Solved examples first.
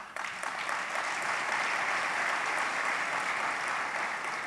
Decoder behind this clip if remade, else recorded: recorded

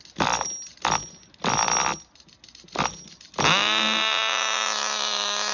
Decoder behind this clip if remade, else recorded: recorded